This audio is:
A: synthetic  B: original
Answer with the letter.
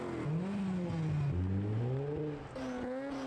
B